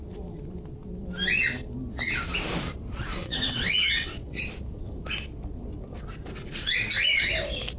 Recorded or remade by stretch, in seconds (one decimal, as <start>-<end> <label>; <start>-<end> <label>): 0.0-3.1 recorded; 3.1-4.4 remade; 4.4-7.8 recorded